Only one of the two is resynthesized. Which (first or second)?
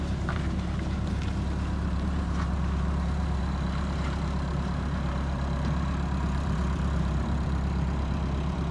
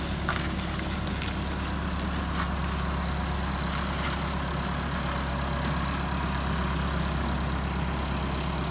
first